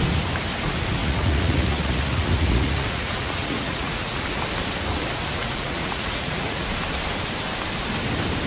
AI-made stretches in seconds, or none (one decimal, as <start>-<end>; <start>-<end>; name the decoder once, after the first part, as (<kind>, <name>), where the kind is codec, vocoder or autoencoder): 1.0-4.4 (vocoder, Vocos); 5.4-6.7